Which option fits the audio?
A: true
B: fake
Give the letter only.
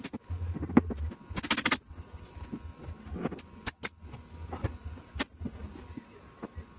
A